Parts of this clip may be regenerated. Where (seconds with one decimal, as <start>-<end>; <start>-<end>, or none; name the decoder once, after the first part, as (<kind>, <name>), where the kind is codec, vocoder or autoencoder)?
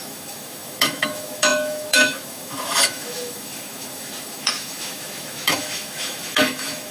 0.0-6.9 (autoencoder, DAC-VAE)